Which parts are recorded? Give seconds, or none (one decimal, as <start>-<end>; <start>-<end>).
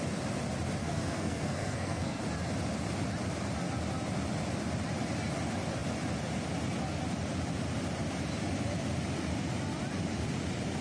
0.0-0.8; 2.2-10.8